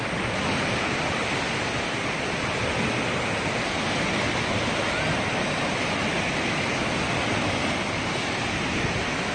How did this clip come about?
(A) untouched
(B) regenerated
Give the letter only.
A